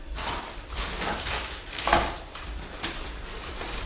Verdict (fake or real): fake